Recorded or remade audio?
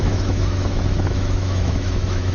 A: remade